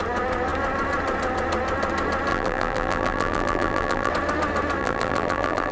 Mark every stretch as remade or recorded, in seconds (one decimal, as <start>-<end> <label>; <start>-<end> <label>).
0.0-2.3 recorded; 2.3-4.1 remade; 4.1-4.8 recorded; 4.8-5.7 remade